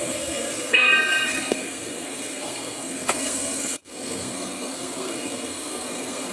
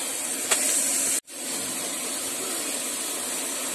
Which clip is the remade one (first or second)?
first